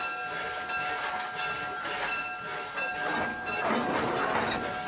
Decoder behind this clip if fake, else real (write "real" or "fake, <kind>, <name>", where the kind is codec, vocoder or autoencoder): real